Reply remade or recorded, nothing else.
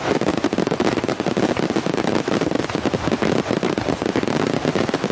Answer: remade